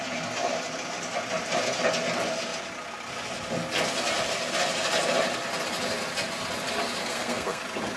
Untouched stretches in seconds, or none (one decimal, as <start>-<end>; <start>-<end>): 0.0-7.0; 7.6-8.0